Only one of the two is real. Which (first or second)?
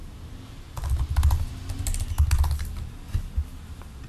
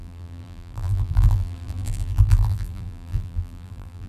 first